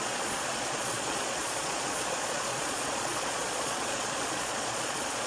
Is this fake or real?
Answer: fake